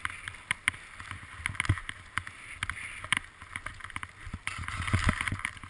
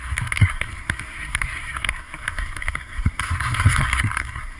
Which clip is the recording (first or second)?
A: first